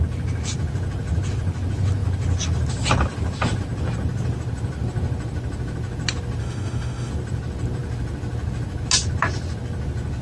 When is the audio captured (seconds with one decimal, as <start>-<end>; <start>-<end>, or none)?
0.0-6.4; 7.1-10.2